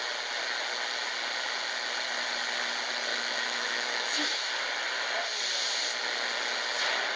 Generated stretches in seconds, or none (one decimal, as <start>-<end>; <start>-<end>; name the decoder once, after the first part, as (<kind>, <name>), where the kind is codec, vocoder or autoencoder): 3.1-4.5 (autoencoder, DAC-VAE)